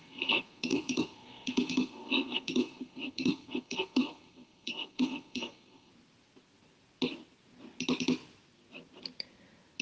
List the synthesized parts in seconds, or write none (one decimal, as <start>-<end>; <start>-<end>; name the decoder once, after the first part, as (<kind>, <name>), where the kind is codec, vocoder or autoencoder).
0.0-5.9 (codec, SNAC)